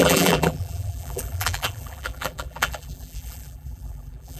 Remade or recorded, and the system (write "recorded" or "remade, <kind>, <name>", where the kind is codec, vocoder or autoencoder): remade, vocoder, BigVGAN v2